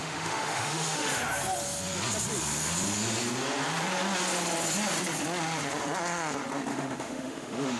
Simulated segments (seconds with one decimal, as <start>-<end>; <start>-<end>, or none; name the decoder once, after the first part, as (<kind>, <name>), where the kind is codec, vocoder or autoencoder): 0.0-1.2 (autoencoder, DAC-VAE); 6.7-7.8